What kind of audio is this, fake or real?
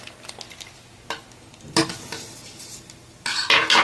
real